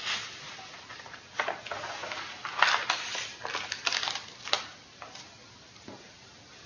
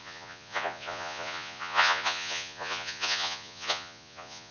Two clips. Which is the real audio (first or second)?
first